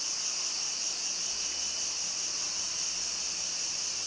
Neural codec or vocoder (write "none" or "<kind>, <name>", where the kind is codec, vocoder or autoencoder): none